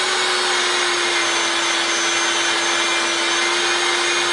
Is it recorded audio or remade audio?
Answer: recorded